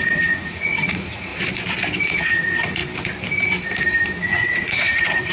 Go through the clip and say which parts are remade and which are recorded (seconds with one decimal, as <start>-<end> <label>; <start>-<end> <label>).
0.0-1.3 remade; 1.3-2.2 recorded; 2.2-2.8 remade; 2.8-4.2 recorded; 4.2-5.3 remade